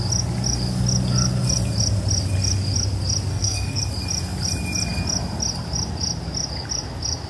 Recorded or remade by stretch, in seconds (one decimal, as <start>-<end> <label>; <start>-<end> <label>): 0.0-3.3 recorded; 3.3-3.8 remade; 3.8-7.3 recorded